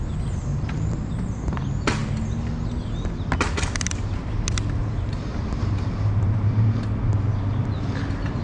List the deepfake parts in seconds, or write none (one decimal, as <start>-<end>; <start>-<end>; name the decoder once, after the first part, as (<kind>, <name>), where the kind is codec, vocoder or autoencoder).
0.5-1.1 (vocoder, BigVGAN v2); 4.8-7.0